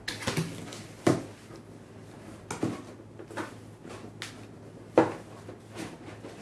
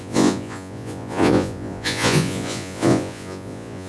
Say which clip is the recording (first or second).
first